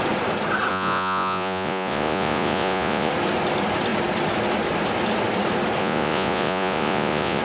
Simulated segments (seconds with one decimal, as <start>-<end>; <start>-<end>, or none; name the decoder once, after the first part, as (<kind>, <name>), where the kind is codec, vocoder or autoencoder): 0.7-3.1 (vocoder, Vocos); 5.8-7.4

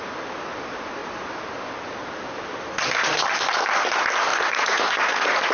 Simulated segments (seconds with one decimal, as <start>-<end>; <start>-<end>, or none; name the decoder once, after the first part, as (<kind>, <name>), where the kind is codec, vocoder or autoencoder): 4.3-5.5 (vocoder, Vocos)

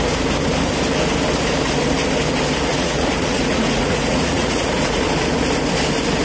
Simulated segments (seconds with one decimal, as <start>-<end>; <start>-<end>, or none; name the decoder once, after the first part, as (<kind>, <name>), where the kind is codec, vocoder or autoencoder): 2.7-5.0 (vocoder, Vocos)

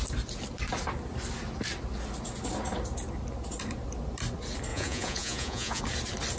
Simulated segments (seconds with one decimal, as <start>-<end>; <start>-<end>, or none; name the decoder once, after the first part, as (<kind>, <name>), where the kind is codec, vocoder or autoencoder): 4.7-5.8 (vocoder, Vocos)

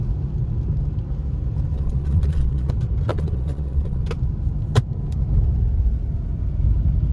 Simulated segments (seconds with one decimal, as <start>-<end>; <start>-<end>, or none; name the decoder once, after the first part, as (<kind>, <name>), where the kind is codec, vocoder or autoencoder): 1.7-2.7 (vocoder, Vocos); 3.1-4.0

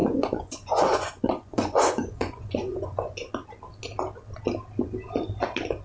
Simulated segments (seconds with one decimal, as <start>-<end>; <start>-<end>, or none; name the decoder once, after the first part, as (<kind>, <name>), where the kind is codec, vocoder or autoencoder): 0.0-3.3 (vocoder, Vocos)